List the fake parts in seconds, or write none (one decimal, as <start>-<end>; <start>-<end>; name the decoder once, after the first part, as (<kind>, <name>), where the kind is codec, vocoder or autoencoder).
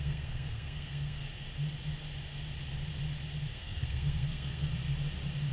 0.0-1.3 (codec, SNAC); 3.5-4.7